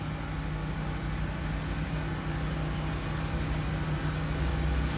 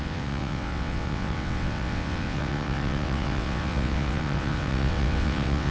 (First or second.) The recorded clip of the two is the first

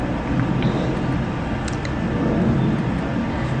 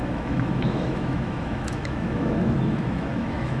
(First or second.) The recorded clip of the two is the first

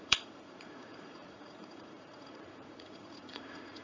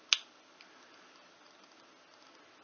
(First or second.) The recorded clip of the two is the second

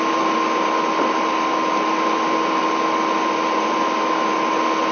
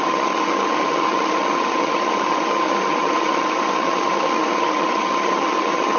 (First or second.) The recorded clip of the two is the first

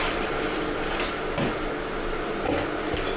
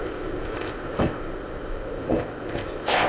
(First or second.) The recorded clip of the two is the first